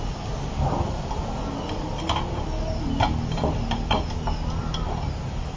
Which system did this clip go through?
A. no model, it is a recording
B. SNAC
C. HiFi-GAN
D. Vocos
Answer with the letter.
A